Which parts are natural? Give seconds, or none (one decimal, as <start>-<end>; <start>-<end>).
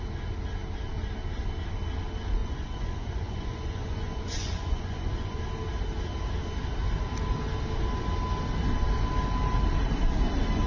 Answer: 0.0-2.4; 5.4-10.7